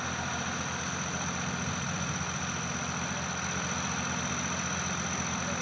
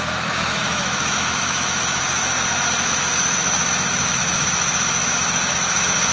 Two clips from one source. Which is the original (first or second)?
first